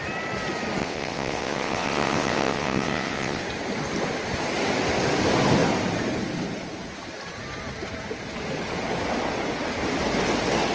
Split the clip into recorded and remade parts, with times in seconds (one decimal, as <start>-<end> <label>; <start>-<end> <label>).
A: 0.0-0.8 recorded; 0.8-3.4 remade; 3.4-10.7 recorded